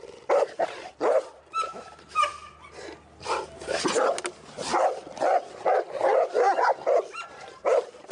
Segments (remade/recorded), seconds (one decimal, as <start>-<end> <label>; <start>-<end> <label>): 0.0-2.3 remade; 2.3-6.0 recorded; 6.0-6.7 remade; 6.7-7.2 recorded; 7.2-8.1 remade